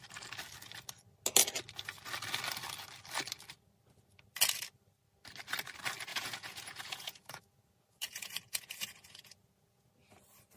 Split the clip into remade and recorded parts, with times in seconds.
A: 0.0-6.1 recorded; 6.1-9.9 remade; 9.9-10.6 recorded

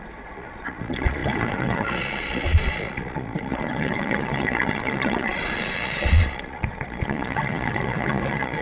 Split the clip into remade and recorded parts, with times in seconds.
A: 0.0-8.6 remade